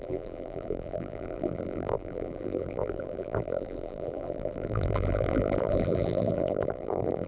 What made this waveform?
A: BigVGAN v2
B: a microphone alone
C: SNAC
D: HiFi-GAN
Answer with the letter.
A